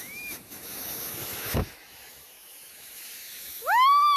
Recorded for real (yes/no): no